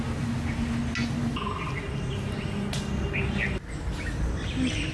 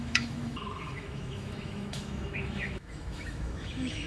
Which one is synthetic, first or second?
second